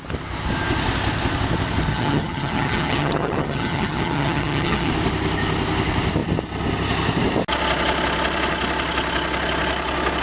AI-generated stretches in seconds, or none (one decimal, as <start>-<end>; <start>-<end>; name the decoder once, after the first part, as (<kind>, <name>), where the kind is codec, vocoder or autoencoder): 1.9-4.9 (vocoder, HiFi-GAN)